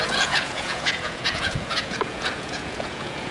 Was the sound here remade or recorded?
remade